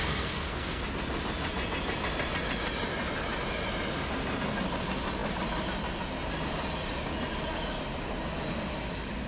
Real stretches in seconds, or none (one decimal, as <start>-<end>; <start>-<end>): 0.8-9.3